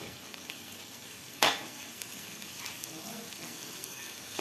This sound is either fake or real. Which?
fake